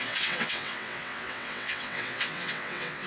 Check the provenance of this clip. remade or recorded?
remade